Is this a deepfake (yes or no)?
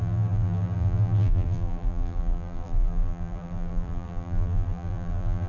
yes